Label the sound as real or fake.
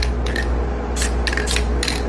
real